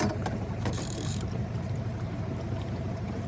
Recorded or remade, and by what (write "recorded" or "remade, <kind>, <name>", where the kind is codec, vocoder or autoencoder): remade, vocoder, BigVGAN v2